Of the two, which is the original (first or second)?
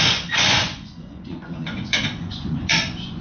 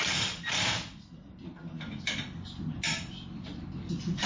second